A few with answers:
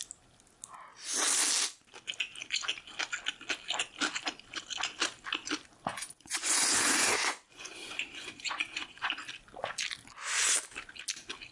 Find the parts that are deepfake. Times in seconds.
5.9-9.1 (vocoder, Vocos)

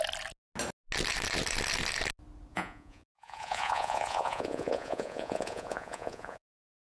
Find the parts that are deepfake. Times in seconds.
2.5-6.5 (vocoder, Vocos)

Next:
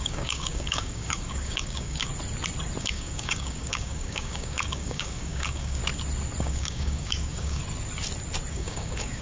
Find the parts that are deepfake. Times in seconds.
0.0-2.1 (codec, DAC); 2.8-5.8; 6.4-7.6; 8.5-9.2

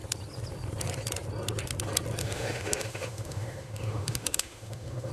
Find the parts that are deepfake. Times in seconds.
2.2-5.1 (autoencoder, DAC-VAE)

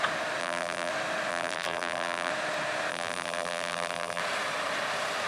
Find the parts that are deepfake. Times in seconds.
0.4-0.9 (vocoder, BigVGAN v2); 1.3-2.3; 2.9-4.2

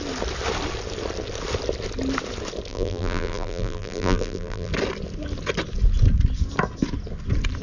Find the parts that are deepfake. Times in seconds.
2.7-4.7 (vocoder, BigVGAN v2)

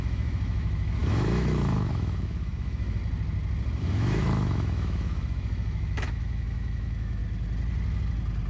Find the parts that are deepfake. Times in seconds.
0.0-3.0 (autoencoder, DAC-VAE); 3.8-7.2